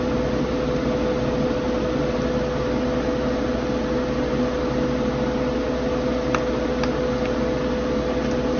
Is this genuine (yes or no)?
yes